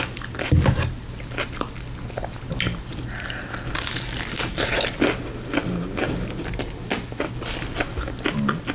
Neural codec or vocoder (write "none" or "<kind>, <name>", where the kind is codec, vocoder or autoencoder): none